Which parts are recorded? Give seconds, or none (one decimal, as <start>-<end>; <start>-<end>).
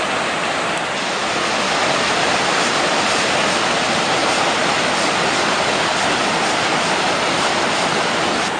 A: 0.0-8.6